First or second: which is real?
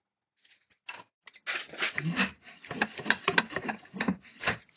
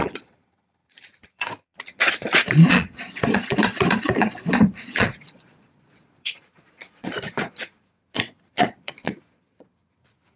first